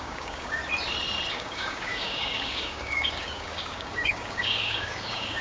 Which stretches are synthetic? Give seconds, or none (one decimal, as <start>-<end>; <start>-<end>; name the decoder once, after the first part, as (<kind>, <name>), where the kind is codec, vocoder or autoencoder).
0.0-0.6 (codec, DAC); 1.3-5.4